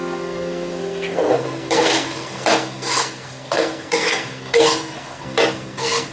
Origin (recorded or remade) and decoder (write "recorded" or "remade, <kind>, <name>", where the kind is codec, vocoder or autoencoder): remade, codec, SNAC